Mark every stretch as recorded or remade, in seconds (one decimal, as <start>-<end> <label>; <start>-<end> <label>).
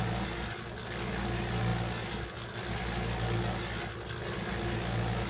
0.0-5.3 recorded